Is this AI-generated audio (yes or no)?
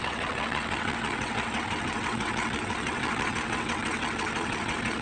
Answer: yes